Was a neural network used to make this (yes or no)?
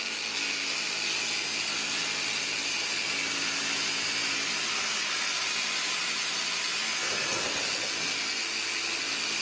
no